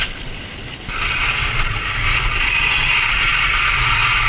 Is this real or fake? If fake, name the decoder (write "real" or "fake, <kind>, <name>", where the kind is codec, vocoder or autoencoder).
real